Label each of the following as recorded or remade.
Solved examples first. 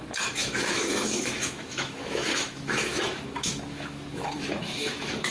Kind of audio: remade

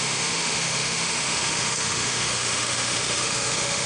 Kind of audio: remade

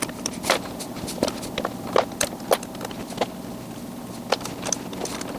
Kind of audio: recorded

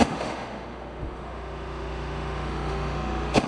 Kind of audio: remade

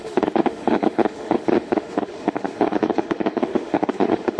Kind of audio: remade